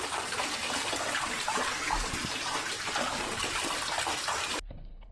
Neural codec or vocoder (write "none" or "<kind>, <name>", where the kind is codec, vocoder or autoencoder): vocoder, BigVGAN v2